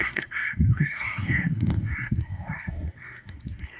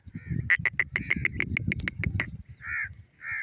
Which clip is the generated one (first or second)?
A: first